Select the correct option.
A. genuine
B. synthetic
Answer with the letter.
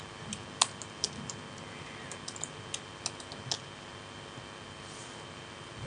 A